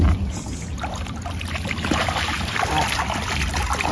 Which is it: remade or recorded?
recorded